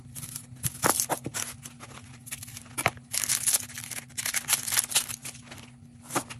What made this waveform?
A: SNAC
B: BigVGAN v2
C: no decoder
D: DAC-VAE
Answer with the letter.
C